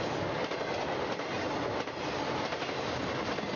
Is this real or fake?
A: real